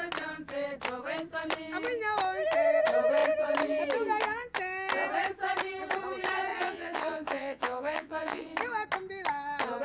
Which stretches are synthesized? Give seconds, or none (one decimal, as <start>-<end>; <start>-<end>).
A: 6.5-8.5